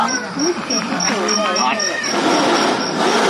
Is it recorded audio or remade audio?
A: recorded